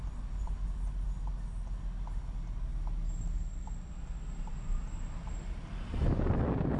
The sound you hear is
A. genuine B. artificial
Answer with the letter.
A